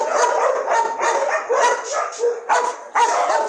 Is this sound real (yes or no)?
yes